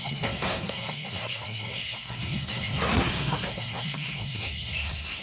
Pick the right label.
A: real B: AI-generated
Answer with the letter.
B